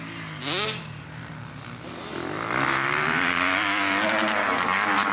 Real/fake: real